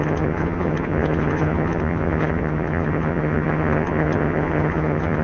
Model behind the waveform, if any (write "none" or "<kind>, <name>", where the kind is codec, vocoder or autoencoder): vocoder, HiFi-GAN